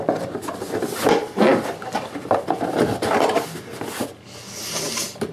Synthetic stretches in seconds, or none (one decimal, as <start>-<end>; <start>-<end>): none